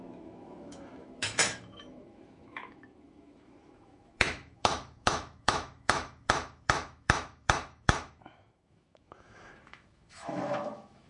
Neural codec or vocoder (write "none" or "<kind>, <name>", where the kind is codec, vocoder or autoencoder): autoencoder, DAC-VAE